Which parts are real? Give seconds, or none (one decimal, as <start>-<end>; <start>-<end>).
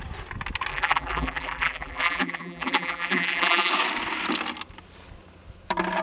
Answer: 0.0-0.7; 3.7-6.0